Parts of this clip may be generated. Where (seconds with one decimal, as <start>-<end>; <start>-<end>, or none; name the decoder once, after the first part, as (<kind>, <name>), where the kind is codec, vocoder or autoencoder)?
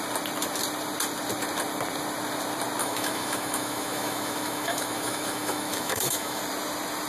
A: 2.8-6.4 (autoencoder, DAC-VAE)